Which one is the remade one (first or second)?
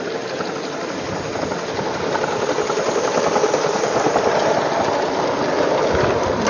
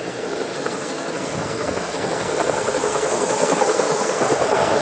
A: second